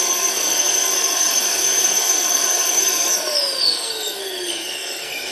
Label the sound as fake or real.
fake